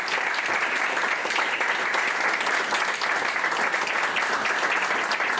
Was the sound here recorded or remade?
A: recorded